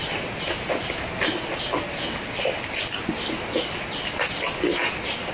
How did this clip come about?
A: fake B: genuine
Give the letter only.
B